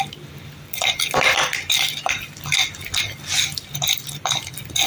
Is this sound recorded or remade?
recorded